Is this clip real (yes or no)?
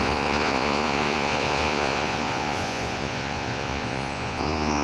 no